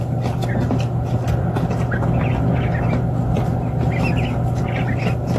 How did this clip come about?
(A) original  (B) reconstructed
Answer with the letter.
A